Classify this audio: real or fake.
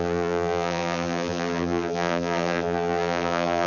fake